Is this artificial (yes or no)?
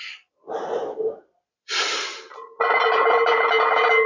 no